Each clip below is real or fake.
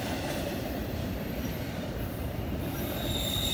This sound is fake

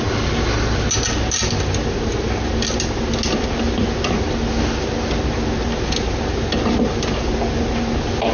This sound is real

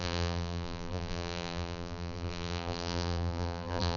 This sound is fake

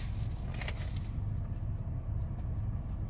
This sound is real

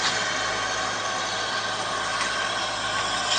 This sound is real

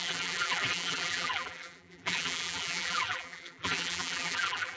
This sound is fake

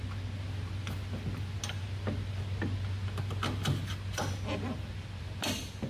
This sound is real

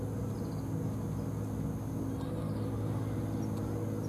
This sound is real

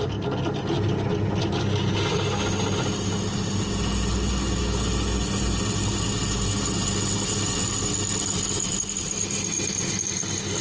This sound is real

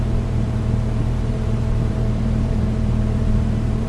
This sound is fake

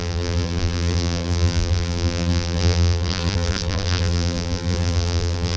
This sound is fake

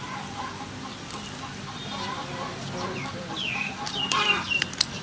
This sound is fake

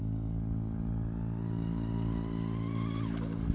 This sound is real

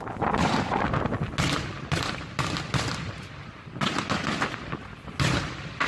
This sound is real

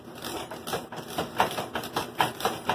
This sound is real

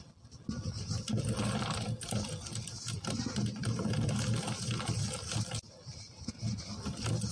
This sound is real